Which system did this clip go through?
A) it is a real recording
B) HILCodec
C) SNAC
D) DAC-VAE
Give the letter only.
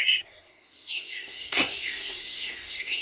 C